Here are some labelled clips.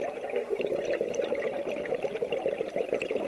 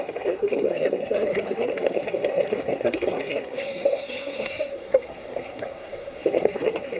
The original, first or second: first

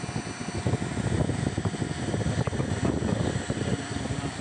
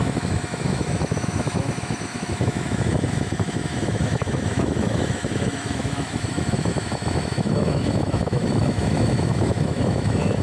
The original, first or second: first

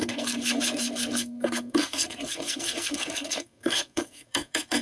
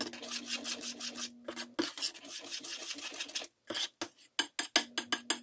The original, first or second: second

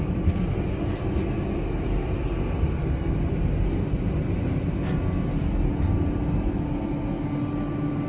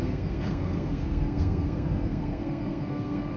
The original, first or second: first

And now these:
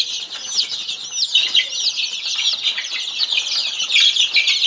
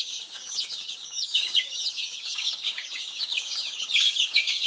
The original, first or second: first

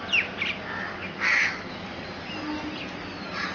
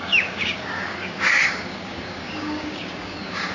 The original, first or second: first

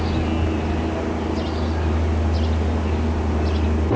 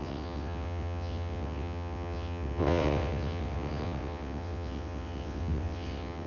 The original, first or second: first